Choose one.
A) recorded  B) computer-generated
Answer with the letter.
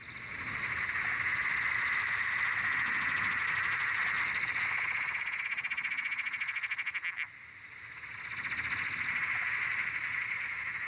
A